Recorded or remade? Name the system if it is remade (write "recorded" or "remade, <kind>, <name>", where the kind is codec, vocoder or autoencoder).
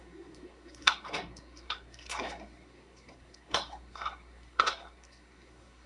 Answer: remade, codec, SNAC